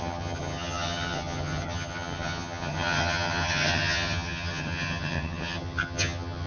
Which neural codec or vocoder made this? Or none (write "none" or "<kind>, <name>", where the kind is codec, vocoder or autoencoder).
vocoder, HiFi-GAN